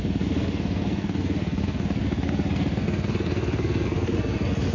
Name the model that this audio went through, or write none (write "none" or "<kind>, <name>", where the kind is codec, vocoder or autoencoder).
codec, SNAC